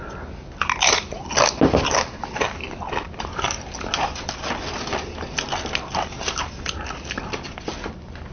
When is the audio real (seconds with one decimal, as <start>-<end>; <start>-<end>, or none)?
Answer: 0.0-8.3